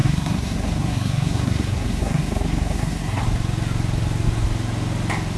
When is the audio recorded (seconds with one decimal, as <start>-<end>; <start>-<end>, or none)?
3.2-5.4